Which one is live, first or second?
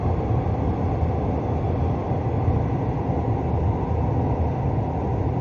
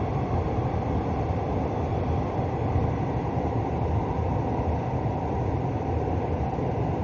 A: first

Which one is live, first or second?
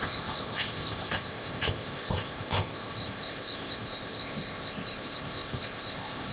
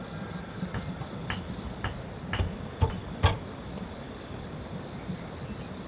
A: second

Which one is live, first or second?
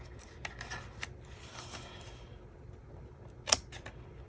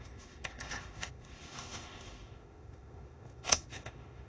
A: first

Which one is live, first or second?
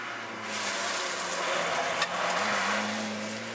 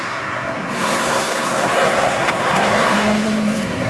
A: first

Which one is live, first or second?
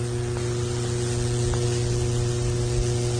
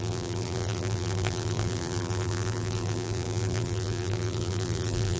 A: first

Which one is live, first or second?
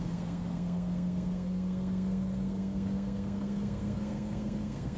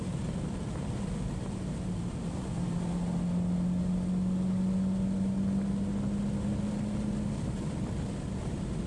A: second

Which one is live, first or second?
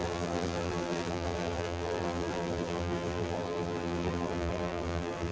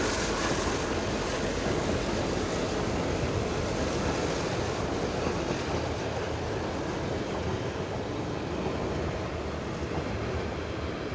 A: second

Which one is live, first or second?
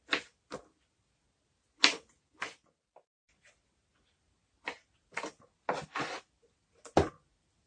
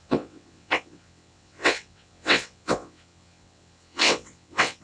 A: first